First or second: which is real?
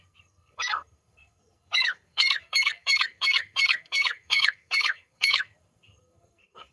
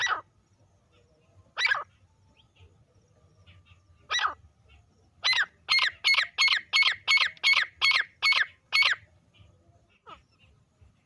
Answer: second